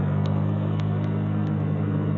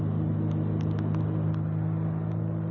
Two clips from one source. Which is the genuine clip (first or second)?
second